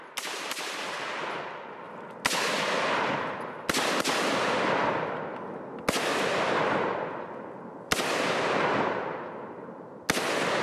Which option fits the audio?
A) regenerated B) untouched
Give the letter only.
B